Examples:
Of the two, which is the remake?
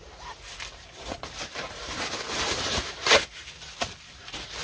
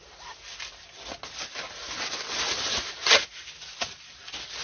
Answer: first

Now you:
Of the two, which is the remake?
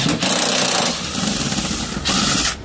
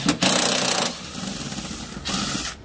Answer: first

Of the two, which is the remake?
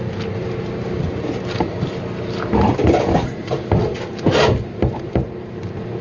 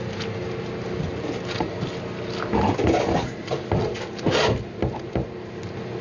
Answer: first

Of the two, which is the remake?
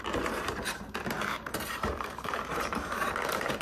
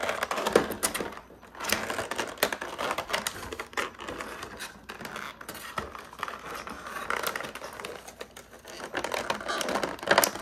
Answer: first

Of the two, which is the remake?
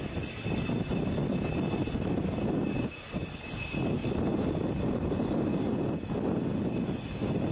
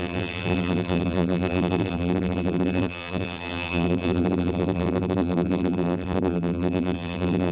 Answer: second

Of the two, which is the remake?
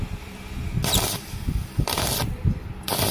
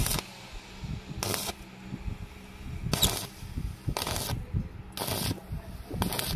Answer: first